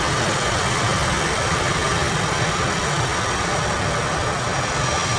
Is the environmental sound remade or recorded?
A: recorded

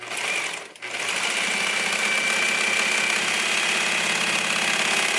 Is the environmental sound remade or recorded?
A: recorded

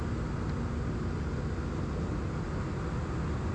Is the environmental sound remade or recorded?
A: recorded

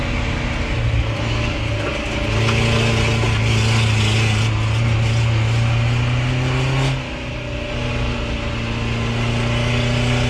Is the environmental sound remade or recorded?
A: recorded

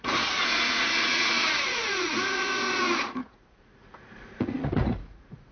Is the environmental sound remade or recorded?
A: remade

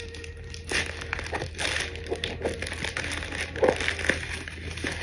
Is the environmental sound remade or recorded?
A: recorded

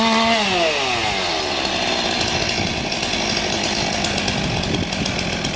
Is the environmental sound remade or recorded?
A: recorded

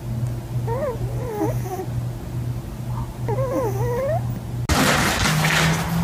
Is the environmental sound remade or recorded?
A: recorded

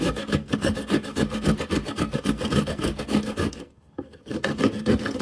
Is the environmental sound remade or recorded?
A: remade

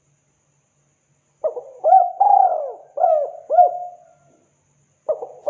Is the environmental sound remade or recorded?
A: recorded